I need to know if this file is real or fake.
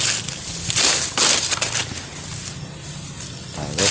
real